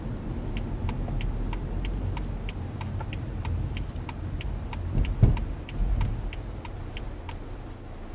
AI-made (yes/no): no